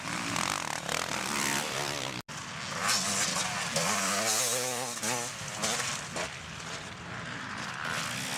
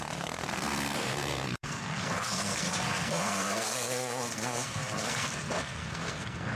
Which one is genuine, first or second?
first